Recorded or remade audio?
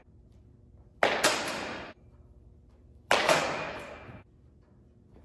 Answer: recorded